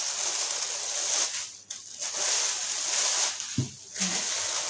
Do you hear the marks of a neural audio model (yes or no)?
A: no